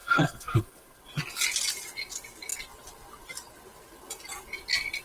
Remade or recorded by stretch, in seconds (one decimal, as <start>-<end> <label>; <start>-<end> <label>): 0.0-1.0 remade; 1.0-5.0 recorded